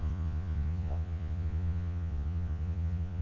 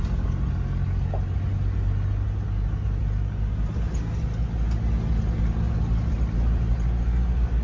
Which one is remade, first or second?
first